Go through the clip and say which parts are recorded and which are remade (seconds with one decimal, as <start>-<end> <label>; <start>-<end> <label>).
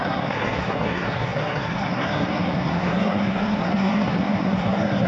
0.0-5.1 remade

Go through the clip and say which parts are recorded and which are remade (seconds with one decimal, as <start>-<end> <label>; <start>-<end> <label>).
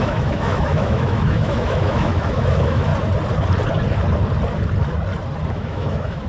0.0-2.9 remade; 2.9-5.5 recorded; 5.5-6.3 remade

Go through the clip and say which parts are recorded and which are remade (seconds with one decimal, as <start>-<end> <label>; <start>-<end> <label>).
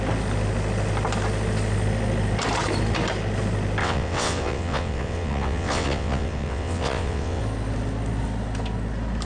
0.0-3.8 recorded; 3.8-7.4 remade; 7.4-9.3 recorded